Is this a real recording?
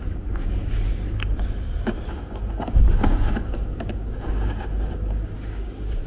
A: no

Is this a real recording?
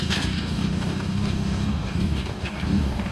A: no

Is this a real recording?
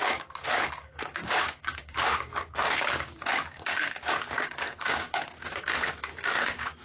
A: no